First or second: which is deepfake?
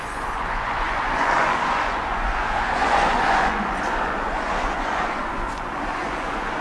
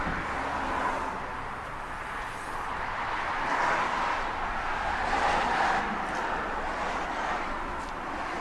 first